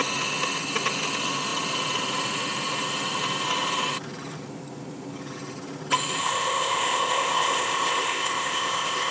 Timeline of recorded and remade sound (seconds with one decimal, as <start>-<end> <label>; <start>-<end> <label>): 0.0-6.2 recorded; 6.2-9.1 remade